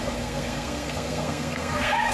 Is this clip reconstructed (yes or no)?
yes